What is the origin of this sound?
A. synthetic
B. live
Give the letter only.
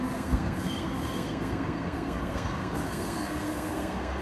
A